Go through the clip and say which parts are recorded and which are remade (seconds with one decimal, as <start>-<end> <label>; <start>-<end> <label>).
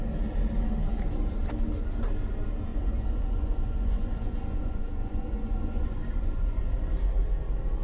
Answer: 0.0-2.7 recorded; 2.7-6.9 remade; 6.9-7.8 recorded